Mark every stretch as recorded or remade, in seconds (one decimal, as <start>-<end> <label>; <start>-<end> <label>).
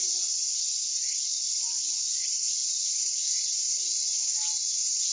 0.0-1.5 remade; 1.5-2.6 recorded; 2.6-3.4 remade; 3.4-5.1 recorded